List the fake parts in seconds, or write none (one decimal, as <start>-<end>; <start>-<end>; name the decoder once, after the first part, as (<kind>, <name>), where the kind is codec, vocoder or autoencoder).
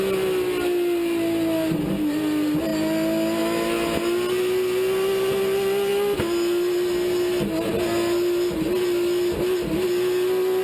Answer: none